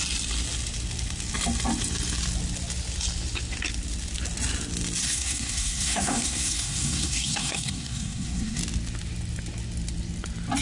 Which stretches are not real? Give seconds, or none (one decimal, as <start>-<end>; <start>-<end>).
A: 5.0-8.6